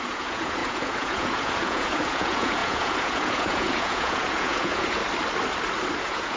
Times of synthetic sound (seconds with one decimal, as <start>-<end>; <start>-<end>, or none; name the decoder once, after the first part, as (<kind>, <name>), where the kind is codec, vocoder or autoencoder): 0.0-5.0 (vocoder, Vocos); 6.0-6.4